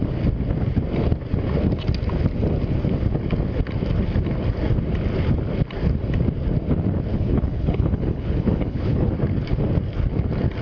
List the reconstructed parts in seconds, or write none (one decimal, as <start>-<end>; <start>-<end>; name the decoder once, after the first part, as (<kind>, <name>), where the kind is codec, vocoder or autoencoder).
7.1-9.1 (codec, HILCodec)